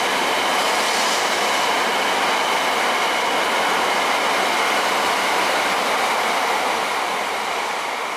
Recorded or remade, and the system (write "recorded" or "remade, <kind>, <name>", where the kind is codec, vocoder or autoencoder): recorded